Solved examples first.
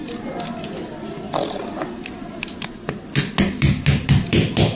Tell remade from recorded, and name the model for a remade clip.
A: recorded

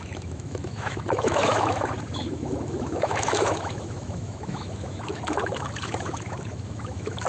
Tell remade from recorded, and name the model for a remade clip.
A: remade, autoencoder, DAC-VAE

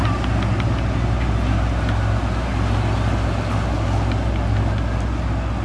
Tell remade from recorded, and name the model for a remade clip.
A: recorded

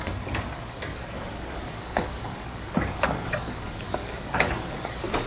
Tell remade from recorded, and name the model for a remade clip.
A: remade, codec, DAC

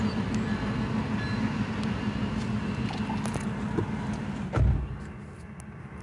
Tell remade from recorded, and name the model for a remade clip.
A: recorded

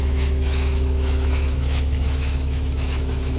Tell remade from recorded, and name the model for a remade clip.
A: remade, autoencoder, DAC-VAE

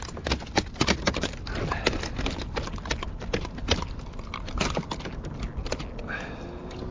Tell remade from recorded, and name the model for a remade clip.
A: recorded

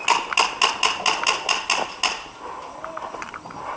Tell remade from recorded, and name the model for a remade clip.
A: recorded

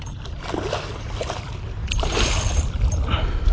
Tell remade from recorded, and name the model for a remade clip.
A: recorded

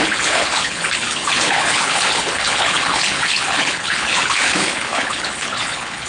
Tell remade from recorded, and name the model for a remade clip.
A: remade, codec, HILCodec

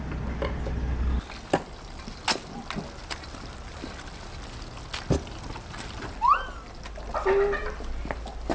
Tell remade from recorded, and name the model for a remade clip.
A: recorded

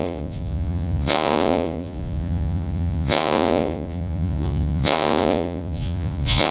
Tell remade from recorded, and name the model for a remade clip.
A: remade, vocoder, Vocos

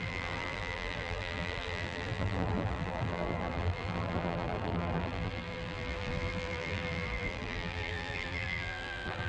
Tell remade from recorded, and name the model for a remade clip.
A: remade, vocoder, BigVGAN v2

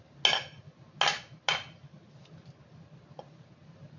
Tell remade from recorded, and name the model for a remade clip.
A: recorded